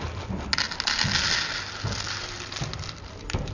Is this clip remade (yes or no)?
no